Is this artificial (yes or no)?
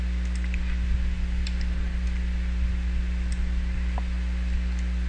no